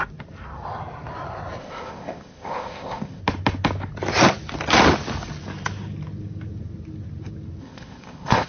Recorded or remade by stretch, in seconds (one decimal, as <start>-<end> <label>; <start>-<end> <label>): 0.0-1.6 recorded; 1.6-3.2 remade; 3.2-7.6 recorded; 7.6-8.5 remade

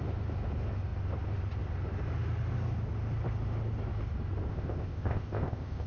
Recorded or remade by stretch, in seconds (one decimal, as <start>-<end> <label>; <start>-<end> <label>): 0.0-4.5 recorded; 4.5-5.9 remade

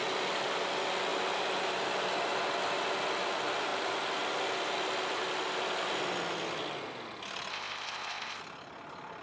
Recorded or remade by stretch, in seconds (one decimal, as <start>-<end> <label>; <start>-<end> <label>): 0.0-7.5 recorded; 7.5-8.4 remade; 8.4-9.2 recorded

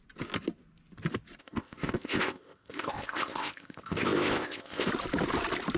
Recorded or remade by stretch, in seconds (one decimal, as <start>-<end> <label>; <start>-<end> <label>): 0.0-1.4 recorded; 1.4-4.9 remade; 4.9-5.8 recorded

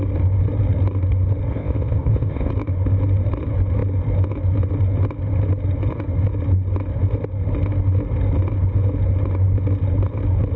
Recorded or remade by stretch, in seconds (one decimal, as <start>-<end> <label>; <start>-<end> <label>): 0.0-1.5 recorded; 1.5-2.5 remade; 2.5-10.6 recorded

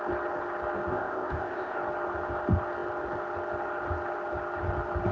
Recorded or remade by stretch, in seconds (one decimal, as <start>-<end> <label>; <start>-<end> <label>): 0.0-0.9 recorded; 0.9-1.8 remade; 1.8-5.1 recorded

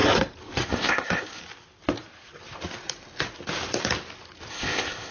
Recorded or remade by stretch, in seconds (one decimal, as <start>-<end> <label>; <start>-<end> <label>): 0.0-0.7 recorded; 0.7-1.4 remade; 1.4-4.5 recorded; 4.5-5.1 remade